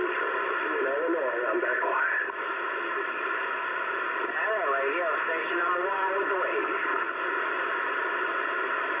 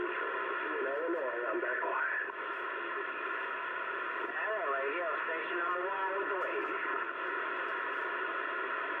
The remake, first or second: first